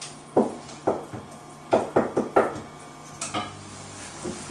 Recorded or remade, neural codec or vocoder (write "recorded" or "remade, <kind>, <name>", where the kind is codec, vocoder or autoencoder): recorded